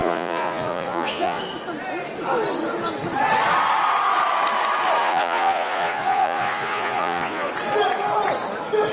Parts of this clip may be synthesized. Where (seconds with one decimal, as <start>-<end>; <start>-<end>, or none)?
0.0-1.4; 5.0-7.5